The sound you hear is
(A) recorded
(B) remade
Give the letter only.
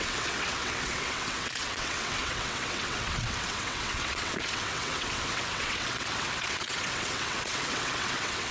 B